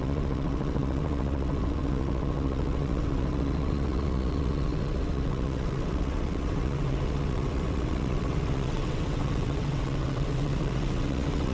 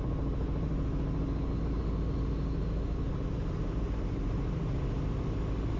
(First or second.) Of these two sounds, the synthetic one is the first